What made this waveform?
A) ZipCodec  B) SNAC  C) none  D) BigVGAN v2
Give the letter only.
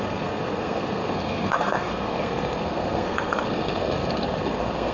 B